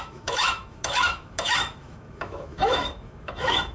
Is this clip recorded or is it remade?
remade